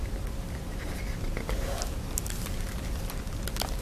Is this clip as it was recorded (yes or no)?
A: yes